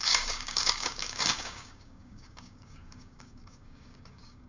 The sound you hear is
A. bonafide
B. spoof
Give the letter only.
B